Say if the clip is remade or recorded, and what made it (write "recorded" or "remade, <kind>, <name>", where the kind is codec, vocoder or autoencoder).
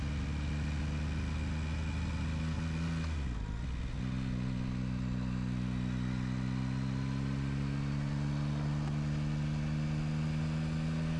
recorded